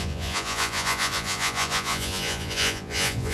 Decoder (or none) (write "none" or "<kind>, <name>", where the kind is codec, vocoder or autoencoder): vocoder, Vocos